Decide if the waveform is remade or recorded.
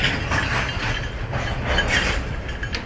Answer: recorded